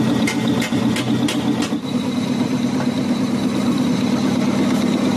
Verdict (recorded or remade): recorded